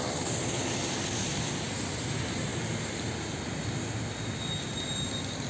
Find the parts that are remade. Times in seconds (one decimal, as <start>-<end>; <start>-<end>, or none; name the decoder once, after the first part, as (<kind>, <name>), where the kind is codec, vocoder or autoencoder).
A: none